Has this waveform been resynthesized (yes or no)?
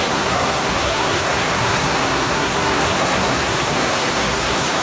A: yes